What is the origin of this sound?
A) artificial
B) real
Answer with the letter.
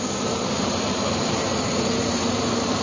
A